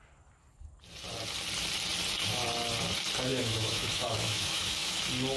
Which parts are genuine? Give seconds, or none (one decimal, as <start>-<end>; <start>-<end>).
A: 0.0-3.3; 5.0-5.4